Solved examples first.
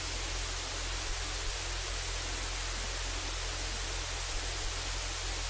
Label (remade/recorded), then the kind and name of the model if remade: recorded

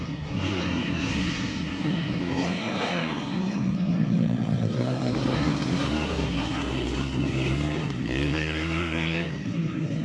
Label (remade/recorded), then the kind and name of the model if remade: remade, codec, SNAC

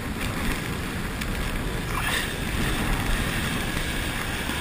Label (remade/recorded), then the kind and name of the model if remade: recorded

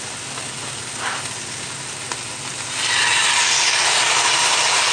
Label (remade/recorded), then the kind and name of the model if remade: recorded